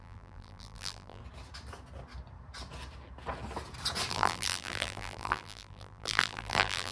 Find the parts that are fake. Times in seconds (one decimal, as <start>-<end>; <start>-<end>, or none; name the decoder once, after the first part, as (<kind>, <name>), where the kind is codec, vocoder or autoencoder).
0.0-1.2 (vocoder, BigVGAN v2); 4.1-6.9